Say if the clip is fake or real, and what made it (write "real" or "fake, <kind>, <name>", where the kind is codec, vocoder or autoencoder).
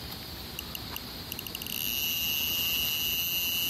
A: real